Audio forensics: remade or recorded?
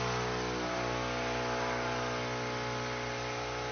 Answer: recorded